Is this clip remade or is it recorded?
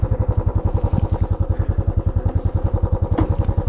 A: recorded